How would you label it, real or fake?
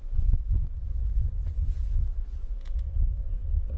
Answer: real